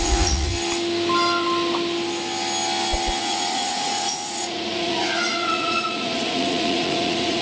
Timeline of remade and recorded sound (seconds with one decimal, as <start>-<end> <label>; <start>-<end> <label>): 0.0-0.5 remade; 0.5-3.2 recorded; 3.2-7.4 remade